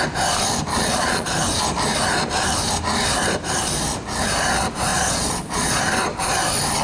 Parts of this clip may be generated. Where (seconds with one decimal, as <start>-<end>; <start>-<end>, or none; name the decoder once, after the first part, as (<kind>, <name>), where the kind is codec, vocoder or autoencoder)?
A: 0.7-1.4 (vocoder, Vocos); 4.9-5.8